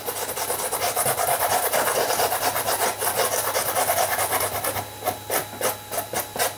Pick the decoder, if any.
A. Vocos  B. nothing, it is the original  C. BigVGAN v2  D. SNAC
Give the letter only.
B